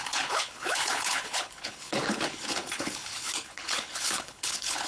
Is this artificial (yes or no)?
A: yes